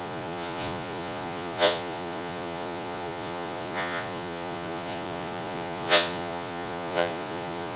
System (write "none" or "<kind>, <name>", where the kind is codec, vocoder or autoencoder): vocoder, Vocos